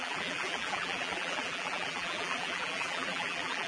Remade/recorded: remade